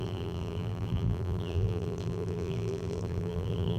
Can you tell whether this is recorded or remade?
remade